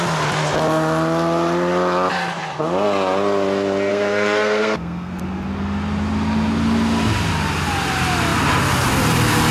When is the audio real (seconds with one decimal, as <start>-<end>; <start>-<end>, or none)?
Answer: 0.0-3.9; 5.2-9.5